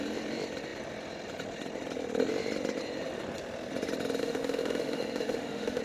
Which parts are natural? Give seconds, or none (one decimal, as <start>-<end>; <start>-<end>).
0.0-4.2